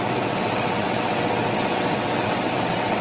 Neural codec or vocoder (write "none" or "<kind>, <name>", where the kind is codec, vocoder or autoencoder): vocoder, WaveNeXt